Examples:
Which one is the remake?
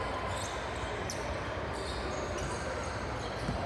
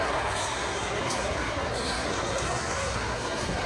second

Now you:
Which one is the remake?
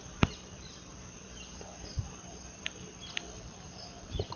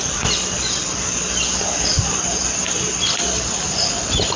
first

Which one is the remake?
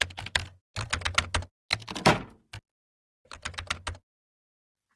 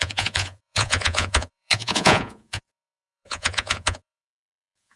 second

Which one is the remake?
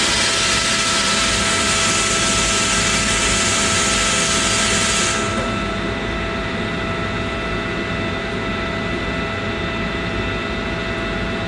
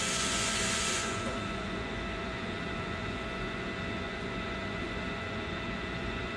second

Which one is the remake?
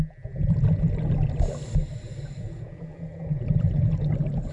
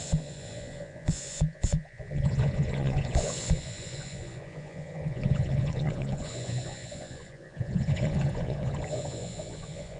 second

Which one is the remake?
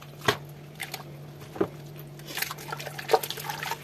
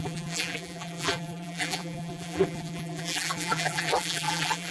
second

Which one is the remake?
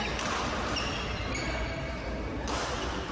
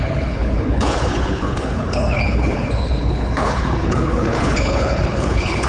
second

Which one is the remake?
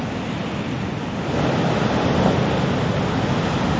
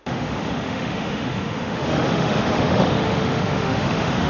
second